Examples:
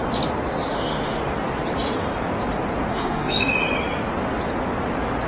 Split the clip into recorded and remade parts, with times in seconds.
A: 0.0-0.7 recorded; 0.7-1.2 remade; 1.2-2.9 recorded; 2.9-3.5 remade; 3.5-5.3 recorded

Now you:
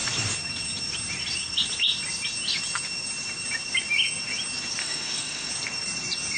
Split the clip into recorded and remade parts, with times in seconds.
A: 0.0-4.8 recorded; 4.8-5.5 remade; 5.5-6.4 recorded

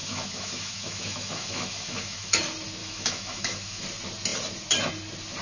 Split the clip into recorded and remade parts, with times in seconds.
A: 0.0-2.4 remade; 2.4-2.8 recorded; 2.8-3.8 remade; 3.8-5.4 recorded